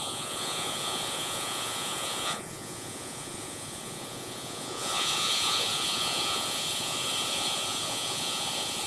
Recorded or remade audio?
remade